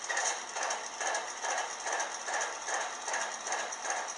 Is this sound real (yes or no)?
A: yes